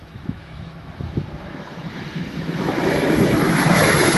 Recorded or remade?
remade